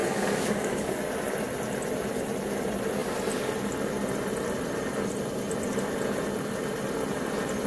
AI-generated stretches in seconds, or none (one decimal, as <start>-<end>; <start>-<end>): 0.0-1.0